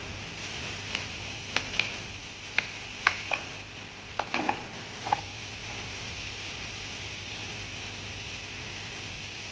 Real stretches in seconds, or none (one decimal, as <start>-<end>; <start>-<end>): 0.0-5.6; 6.7-9.5